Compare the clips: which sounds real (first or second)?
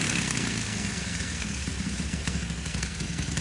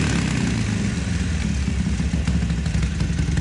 second